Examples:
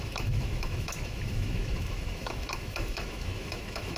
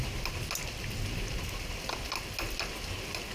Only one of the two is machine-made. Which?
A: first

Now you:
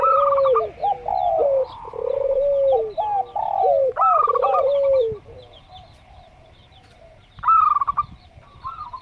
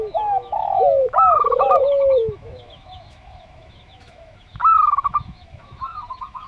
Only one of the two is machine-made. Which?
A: second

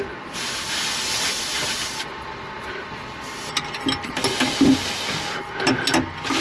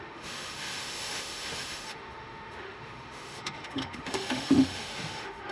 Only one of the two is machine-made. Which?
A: second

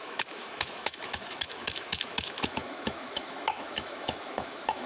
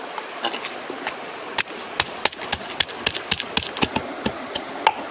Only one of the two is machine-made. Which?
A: first